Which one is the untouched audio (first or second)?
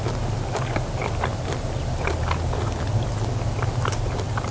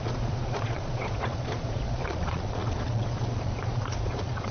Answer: first